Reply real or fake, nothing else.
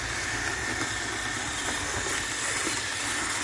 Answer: real